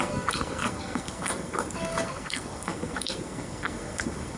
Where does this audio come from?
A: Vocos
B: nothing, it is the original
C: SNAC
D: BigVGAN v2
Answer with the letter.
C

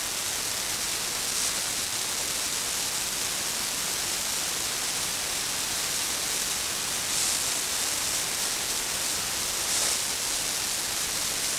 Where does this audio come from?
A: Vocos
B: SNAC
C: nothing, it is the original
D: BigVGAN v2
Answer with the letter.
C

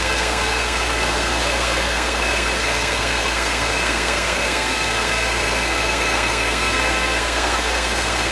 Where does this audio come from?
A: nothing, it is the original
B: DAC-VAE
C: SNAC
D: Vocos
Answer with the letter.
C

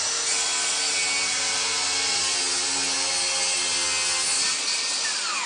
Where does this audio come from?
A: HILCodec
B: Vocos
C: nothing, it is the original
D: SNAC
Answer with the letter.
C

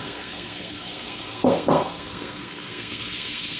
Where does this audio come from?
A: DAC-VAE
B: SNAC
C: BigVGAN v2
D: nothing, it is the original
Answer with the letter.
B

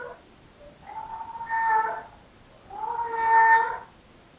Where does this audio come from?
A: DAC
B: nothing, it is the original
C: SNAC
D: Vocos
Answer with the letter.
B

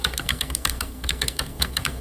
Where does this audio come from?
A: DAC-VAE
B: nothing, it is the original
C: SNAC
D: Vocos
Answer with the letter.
C